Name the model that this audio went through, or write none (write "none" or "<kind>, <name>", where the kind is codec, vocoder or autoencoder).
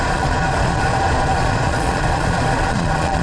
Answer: vocoder, Vocos